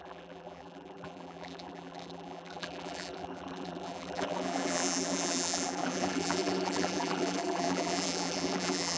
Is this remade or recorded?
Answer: remade